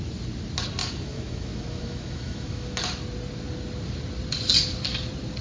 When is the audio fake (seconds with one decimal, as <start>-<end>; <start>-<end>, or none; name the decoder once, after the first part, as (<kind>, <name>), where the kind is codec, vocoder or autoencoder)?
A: 0.8-2.7 (autoencoder, DAC-VAE)